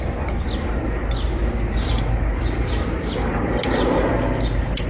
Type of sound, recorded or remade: recorded